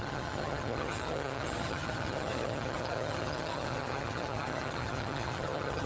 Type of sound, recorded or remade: remade